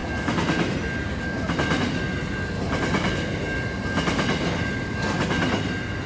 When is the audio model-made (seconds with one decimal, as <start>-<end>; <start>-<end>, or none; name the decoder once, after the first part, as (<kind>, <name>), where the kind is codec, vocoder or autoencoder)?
none